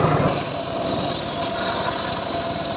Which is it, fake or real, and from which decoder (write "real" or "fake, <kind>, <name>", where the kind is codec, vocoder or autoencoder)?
real